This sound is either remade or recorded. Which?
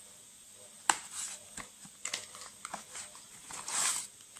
recorded